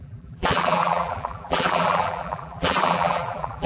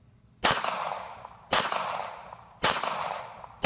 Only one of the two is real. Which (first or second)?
second